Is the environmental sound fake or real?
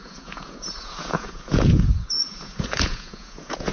fake